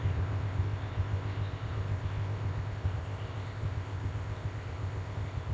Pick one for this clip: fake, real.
fake